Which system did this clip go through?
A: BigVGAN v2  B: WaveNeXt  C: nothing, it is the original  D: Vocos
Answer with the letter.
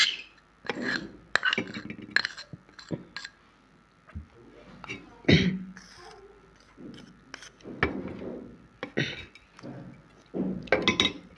C